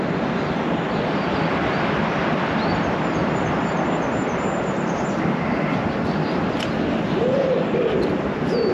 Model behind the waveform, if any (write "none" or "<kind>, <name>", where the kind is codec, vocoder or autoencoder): none